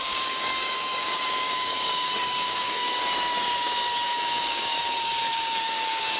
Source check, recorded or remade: remade